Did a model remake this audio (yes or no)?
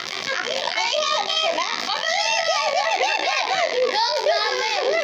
yes